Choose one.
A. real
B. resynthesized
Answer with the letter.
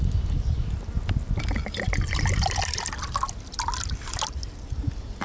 A